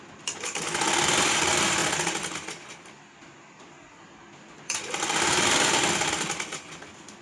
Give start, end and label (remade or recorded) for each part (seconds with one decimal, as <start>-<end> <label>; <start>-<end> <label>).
0.0-7.2 recorded